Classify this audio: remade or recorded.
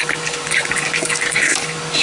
remade